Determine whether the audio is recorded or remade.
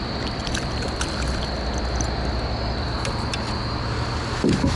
recorded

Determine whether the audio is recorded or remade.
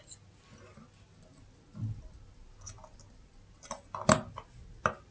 recorded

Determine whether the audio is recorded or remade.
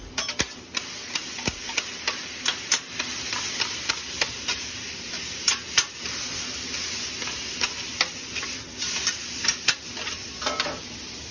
recorded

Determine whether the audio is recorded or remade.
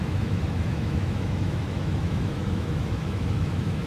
remade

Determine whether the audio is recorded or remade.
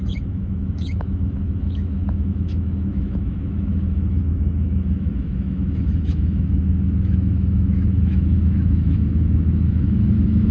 remade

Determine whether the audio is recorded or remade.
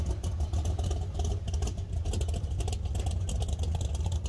recorded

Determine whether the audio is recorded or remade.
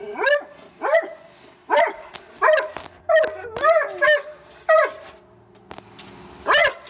recorded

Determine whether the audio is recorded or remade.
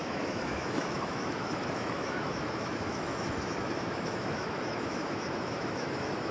remade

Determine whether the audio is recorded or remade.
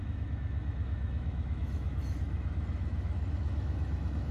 remade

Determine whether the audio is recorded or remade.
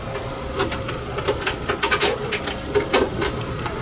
recorded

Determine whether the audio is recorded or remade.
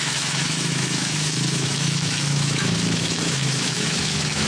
remade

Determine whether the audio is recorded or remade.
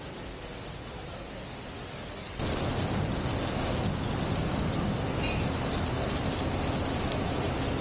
recorded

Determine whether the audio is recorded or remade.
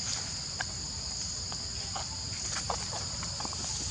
recorded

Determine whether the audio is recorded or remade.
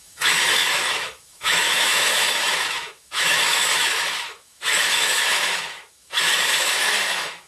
remade